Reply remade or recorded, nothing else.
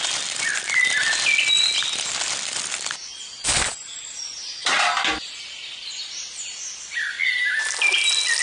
recorded